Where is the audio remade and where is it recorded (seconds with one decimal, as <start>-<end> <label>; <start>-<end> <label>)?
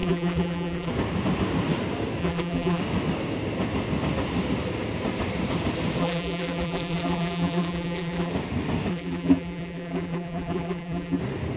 0.0-0.9 remade; 0.9-2.2 recorded; 2.2-2.8 remade; 2.8-6.0 recorded; 6.0-8.3 remade; 8.3-8.9 recorded; 8.9-11.2 remade; 11.2-11.6 recorded